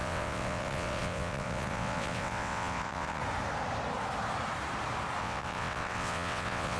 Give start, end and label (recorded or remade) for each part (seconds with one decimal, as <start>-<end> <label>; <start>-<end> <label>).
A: 0.0-3.2 remade; 3.2-5.2 recorded; 5.2-6.8 remade